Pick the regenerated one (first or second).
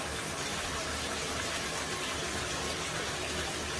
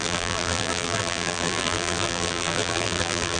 second